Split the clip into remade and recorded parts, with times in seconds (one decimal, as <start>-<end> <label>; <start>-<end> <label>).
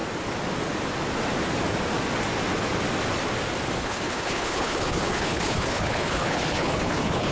0.0-3.8 recorded; 3.8-7.3 remade